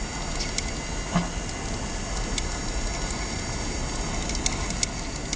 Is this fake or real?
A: real